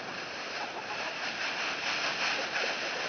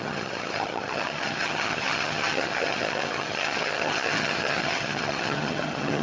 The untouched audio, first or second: first